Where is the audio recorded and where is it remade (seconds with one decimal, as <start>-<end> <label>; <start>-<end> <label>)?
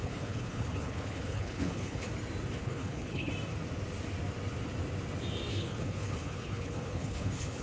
0.0-2.1 remade; 2.1-2.6 recorded; 2.6-3.3 remade; 3.3-5.5 recorded; 5.5-7.6 remade